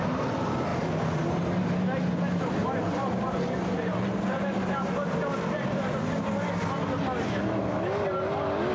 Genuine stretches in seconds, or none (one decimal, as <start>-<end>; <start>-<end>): 0.0-2.6; 5.0-8.7